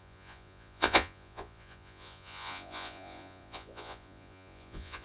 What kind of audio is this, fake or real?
fake